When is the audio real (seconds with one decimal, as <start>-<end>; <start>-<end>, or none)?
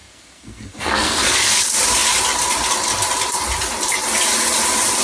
1.6-5.0